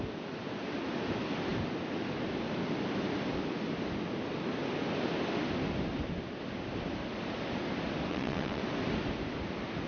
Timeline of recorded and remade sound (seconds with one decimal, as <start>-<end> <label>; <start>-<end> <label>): 0.0-8.1 recorded; 8.1-8.6 remade; 8.6-9.9 recorded